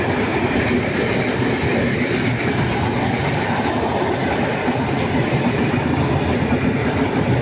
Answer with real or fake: real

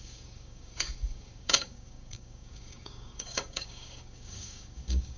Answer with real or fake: fake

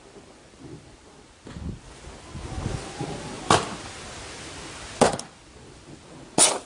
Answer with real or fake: real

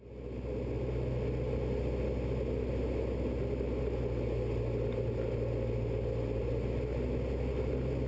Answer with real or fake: real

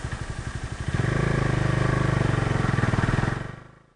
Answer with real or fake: real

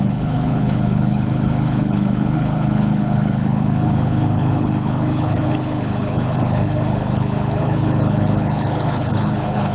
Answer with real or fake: fake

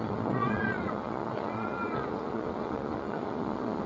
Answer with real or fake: fake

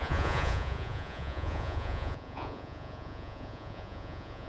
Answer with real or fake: fake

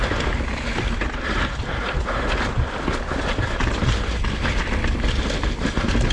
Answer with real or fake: real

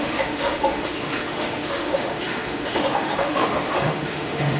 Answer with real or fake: fake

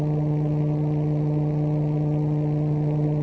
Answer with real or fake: real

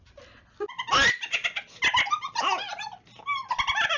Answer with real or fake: real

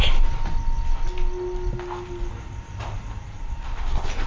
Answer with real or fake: real